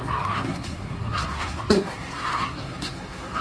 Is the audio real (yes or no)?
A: no